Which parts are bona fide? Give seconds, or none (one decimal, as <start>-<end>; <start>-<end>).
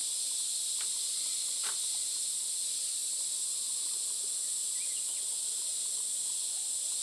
0.0-7.0